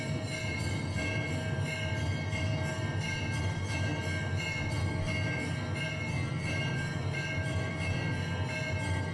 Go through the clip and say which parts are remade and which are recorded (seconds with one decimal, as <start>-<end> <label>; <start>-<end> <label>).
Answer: 0.0-9.1 recorded